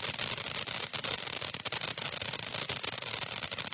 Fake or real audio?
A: real